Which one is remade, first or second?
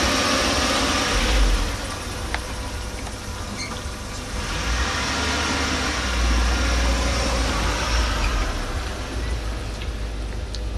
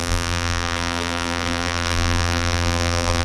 second